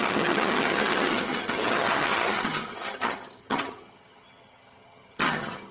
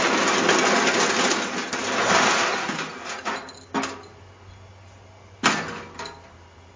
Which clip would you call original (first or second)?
second